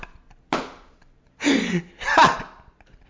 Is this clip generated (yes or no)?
no